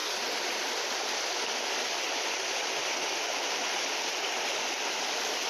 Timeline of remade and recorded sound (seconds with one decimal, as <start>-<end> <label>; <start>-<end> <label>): 0.0-5.5 recorded